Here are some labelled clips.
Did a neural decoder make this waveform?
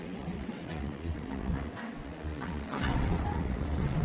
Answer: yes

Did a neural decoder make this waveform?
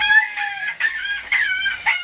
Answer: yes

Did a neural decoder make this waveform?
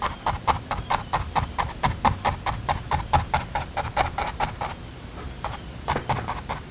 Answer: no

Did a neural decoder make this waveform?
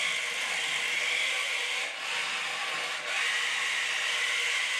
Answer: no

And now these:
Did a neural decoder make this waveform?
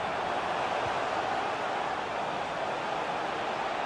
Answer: no